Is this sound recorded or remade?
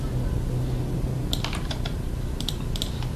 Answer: recorded